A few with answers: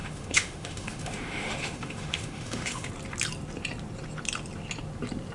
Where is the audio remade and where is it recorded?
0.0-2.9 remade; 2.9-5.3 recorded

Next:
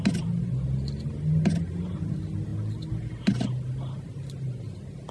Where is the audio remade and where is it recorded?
0.0-5.1 recorded

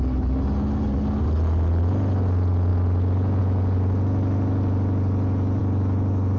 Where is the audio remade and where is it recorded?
0.0-6.4 recorded

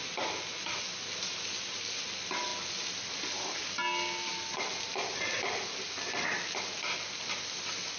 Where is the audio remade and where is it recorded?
0.0-8.0 recorded

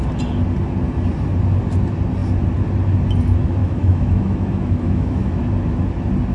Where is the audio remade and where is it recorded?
0.0-3.6 recorded; 3.6-5.4 remade; 5.4-6.3 recorded